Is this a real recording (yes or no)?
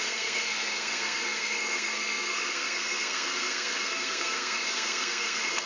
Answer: no